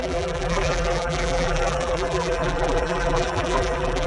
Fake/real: fake